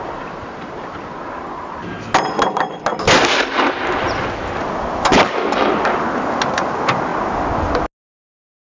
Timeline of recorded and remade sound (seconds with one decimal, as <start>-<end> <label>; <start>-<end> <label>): 0.0-8.8 recorded